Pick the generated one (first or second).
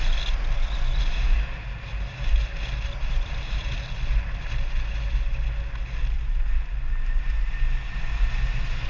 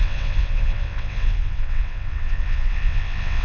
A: second